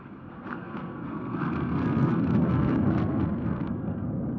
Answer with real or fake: fake